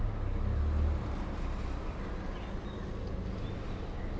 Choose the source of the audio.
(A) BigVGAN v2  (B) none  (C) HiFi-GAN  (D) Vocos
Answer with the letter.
B